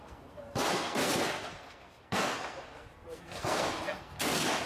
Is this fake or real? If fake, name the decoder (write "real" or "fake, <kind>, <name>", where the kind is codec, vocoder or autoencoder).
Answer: fake, codec, SNAC